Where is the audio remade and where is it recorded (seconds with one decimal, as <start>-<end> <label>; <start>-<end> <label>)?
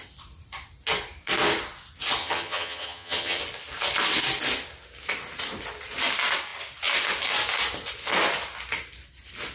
0.0-2.2 recorded; 2.2-3.4 remade; 3.4-9.5 recorded